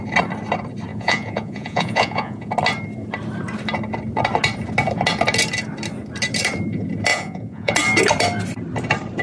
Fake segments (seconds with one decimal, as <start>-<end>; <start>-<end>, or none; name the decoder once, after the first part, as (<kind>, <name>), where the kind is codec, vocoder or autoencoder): 0.9-2.5 (vocoder, Vocos); 7.1-7.7